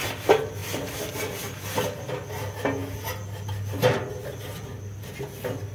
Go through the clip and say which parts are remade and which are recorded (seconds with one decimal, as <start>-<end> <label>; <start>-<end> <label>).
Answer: 0.0-5.7 recorded